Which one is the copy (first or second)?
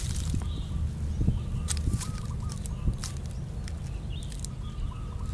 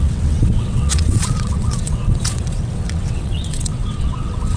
second